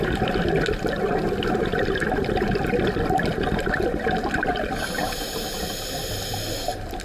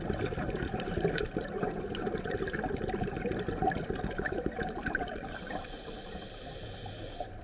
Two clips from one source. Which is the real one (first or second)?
first